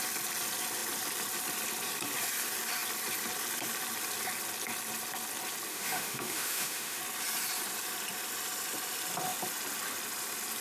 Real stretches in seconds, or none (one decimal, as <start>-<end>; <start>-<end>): 0.0-5.7; 7.0-10.6